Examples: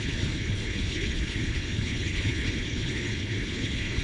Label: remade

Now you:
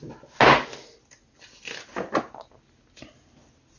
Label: recorded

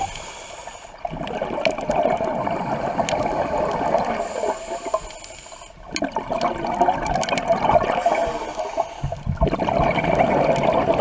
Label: recorded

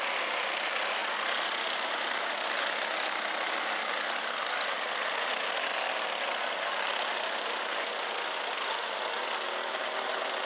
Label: recorded